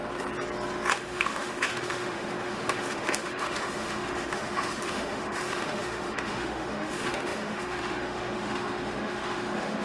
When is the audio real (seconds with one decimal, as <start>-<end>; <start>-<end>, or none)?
0.0-0.9